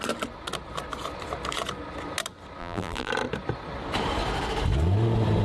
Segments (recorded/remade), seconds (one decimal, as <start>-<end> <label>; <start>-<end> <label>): 0.0-2.6 recorded; 2.6-3.1 remade; 3.1-5.4 recorded